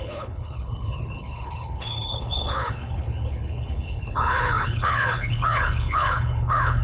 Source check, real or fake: fake